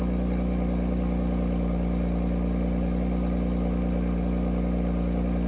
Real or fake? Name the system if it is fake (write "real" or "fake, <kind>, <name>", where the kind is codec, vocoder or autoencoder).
real